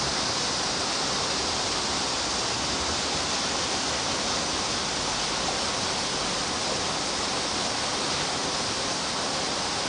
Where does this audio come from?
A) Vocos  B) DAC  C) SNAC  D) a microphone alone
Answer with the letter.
D